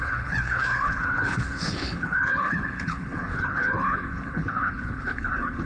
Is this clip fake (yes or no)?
yes